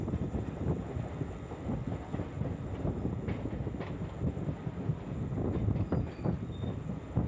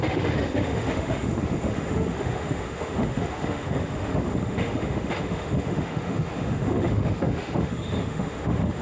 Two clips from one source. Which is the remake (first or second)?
second